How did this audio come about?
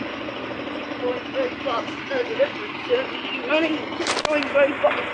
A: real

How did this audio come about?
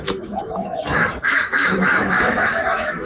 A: fake